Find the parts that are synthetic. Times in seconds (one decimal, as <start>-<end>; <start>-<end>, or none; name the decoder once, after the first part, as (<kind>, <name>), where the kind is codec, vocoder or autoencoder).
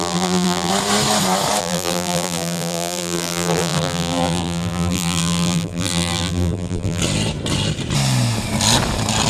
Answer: 0.0-0.7 (vocoder, BigVGAN v2); 1.6-7.0